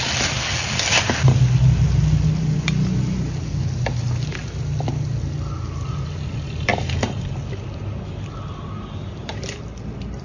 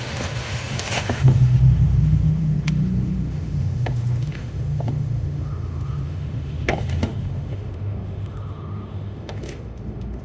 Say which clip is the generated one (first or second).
second